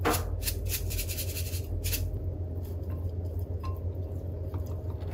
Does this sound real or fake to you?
real